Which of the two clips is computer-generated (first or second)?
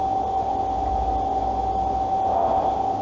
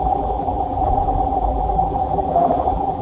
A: second